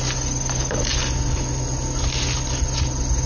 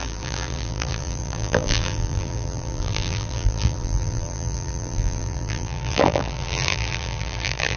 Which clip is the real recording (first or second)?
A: first